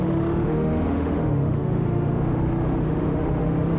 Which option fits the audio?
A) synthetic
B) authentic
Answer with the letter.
A